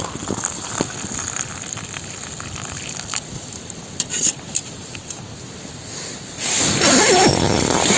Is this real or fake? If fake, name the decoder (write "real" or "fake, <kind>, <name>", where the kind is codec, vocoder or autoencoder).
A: real